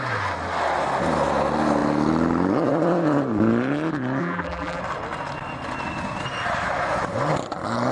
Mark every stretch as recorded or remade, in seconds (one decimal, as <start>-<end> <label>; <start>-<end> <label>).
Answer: 0.0-4.2 recorded; 4.2-4.8 remade; 4.8-7.9 recorded